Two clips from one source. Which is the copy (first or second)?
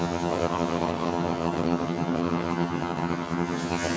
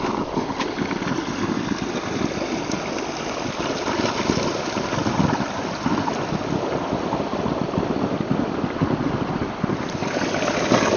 first